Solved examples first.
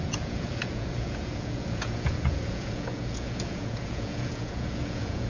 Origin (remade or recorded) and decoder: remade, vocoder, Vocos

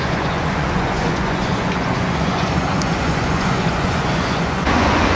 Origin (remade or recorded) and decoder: remade, vocoder, Vocos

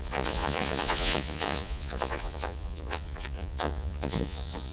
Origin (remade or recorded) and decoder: remade, vocoder, Vocos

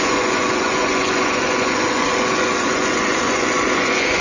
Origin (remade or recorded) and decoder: remade, vocoder, Vocos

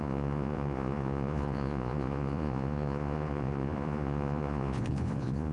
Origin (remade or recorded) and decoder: remade, vocoder, Vocos